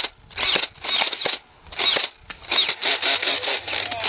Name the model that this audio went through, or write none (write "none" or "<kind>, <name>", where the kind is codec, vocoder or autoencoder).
none